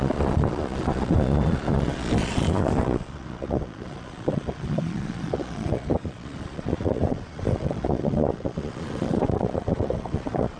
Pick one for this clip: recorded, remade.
remade